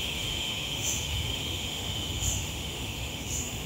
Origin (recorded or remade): remade